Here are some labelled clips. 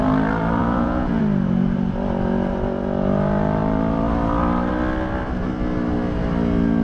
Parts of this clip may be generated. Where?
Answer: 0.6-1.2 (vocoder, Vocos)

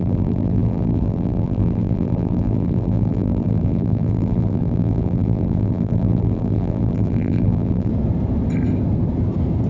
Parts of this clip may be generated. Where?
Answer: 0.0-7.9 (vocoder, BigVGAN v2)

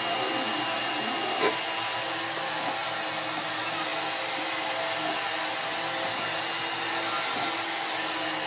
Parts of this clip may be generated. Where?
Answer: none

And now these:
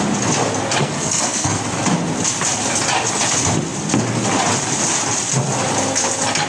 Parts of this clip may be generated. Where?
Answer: 0.8-1.6 (codec, SNAC)

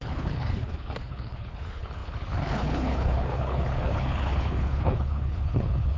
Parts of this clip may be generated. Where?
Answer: 0.0-6.0 (codec, HILCodec)

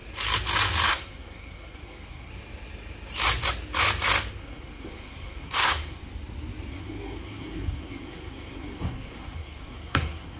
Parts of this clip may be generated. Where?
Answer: 0.9-2.3 (codec, SNAC); 4.3-6.0; 6.7-10.4